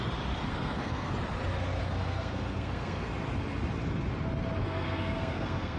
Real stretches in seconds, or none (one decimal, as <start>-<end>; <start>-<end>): 0.0-0.5; 1.1-1.8; 3.1-4.6